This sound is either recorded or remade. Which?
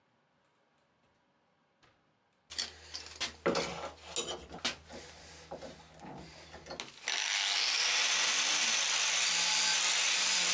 recorded